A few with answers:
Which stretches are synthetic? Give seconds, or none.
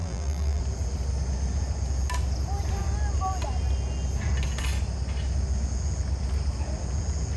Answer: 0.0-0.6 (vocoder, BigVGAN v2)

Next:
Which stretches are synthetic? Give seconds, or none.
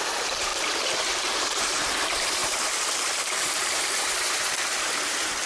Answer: 0.0-5.5 (vocoder, BigVGAN v2)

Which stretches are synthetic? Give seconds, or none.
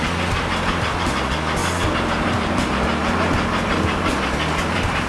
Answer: 1.6-5.1 (vocoder, BigVGAN v2)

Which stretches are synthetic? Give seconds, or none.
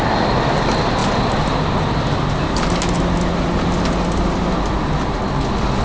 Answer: none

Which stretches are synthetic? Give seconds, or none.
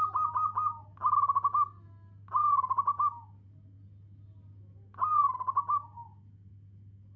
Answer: none